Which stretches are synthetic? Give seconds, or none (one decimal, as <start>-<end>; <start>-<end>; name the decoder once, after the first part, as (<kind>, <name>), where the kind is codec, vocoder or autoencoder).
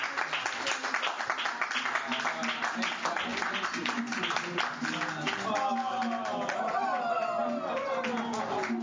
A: none